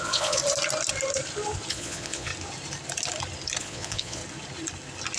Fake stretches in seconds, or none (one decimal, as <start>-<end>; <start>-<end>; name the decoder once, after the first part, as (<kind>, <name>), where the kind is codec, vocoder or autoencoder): 0.0-0.4 (vocoder, Vocos); 1.7-2.3; 3.6-4.2